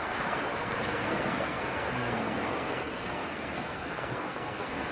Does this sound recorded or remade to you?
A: remade